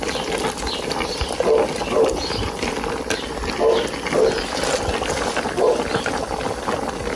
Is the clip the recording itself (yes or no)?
yes